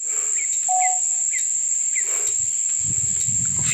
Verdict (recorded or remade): recorded